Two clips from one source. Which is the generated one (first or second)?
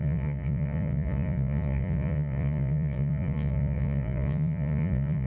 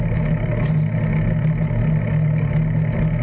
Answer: first